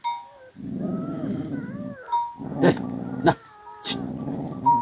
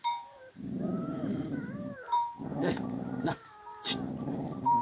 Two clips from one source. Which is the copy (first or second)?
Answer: second